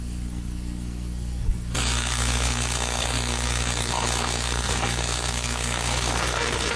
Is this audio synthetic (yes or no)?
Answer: yes